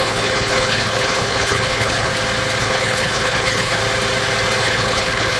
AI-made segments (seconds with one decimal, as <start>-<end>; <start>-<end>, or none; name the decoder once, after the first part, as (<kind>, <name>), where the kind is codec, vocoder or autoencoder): 0.0-2.1 (codec, HILCodec); 2.6-3.8; 4.6-5.4